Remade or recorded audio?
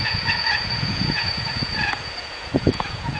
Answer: remade